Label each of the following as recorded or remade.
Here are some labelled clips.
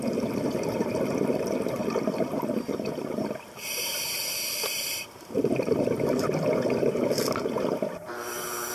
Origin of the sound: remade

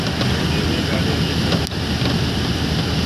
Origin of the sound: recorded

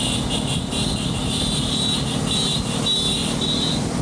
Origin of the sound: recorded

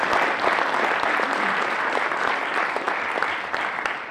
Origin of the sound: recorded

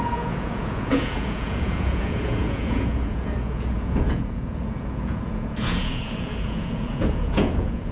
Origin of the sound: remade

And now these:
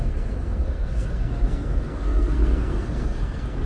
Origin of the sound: remade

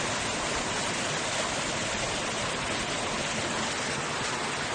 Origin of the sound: recorded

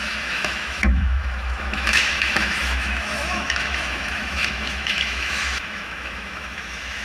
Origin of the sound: remade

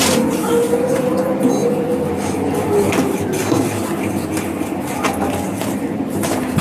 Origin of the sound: recorded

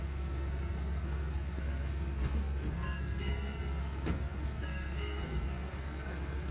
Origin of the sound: remade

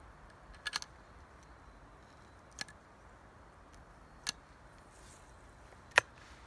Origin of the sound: recorded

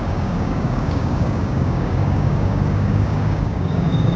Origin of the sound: remade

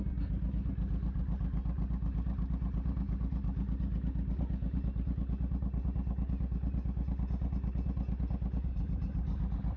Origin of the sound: recorded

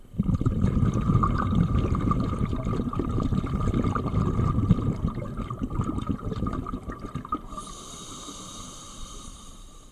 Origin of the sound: remade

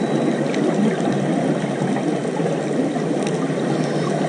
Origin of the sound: recorded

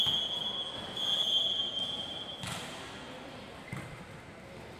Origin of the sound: recorded